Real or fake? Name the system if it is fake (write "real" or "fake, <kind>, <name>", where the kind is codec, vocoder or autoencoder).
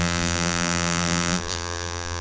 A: fake, vocoder, BigVGAN v2